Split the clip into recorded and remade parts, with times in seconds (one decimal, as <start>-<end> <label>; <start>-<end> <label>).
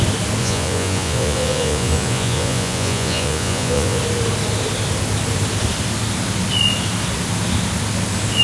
0.0-0.4 recorded; 0.4-4.0 remade; 4.0-8.4 recorded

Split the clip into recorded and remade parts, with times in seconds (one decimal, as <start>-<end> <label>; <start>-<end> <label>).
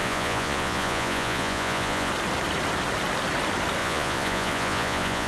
0.0-2.1 remade; 2.1-3.8 recorded; 3.8-5.3 remade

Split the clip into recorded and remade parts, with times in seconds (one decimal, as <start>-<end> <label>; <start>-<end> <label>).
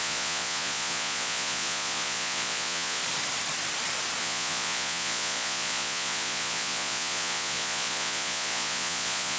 0.0-3.0 remade; 3.0-4.2 recorded; 4.2-9.4 remade